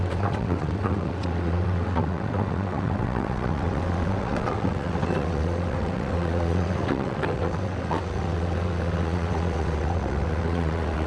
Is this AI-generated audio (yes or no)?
yes